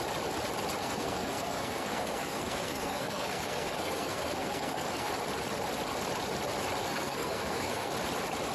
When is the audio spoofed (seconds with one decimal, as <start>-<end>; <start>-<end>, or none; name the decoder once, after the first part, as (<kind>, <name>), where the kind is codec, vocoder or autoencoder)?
0.8-5.1 (codec, SNAC); 6.8-7.9